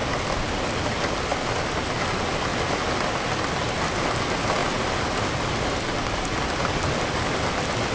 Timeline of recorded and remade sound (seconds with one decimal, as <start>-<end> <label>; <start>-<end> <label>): 0.0-7.9 recorded